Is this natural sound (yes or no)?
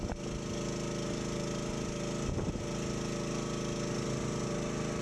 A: yes